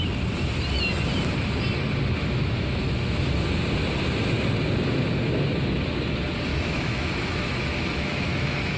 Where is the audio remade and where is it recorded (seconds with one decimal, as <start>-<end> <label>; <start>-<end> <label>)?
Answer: 0.0-2.2 recorded; 2.2-3.4 remade; 3.4-6.5 recorded; 6.5-8.8 remade